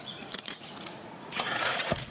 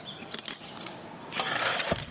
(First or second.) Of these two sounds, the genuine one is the second